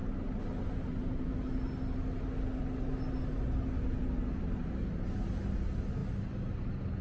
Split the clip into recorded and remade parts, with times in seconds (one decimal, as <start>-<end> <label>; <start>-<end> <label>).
0.0-7.0 recorded